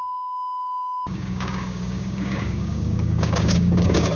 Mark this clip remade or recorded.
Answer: remade